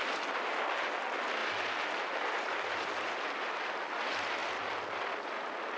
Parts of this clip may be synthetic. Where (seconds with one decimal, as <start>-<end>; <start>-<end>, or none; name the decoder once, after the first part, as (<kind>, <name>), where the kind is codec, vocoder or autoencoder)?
none